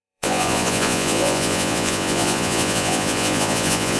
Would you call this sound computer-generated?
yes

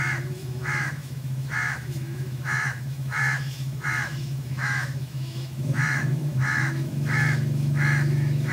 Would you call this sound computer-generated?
yes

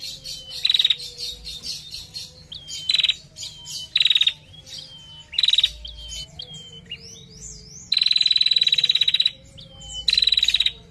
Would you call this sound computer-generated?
no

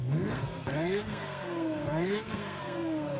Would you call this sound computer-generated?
yes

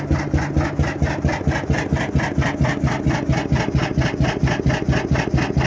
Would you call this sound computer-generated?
no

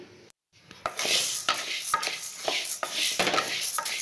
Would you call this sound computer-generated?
yes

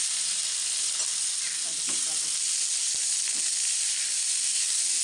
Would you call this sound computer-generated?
no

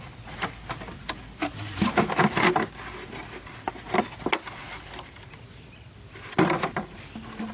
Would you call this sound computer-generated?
no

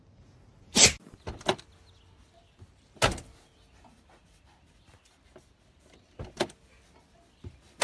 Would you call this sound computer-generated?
no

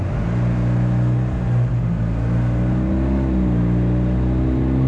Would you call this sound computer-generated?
no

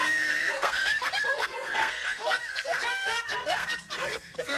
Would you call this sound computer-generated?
yes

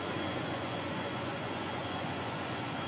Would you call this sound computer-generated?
yes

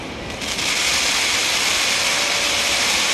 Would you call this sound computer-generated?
no